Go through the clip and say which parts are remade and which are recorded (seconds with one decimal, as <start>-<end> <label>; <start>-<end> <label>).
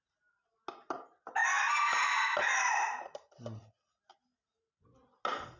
0.0-5.6 recorded